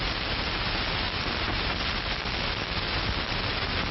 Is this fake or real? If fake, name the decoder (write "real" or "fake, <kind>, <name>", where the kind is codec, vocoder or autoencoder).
real